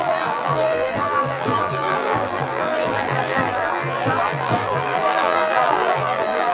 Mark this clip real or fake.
fake